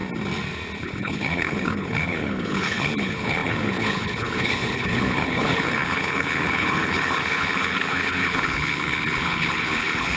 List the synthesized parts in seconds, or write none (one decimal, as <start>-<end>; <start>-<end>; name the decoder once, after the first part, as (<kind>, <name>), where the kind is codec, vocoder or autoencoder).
0.8-10.2 (codec, HILCodec)